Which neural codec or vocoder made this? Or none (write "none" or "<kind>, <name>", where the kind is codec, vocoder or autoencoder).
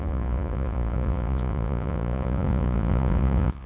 vocoder, Vocos